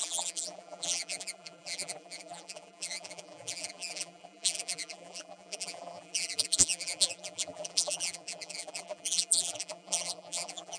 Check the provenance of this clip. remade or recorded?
remade